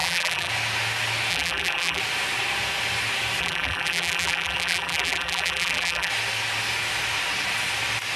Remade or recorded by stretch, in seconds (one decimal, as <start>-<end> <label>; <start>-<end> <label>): 0.0-0.5 remade; 0.5-1.3 recorded; 1.3-2.0 remade; 2.0-3.4 recorded; 3.4-6.1 remade; 6.1-8.2 recorded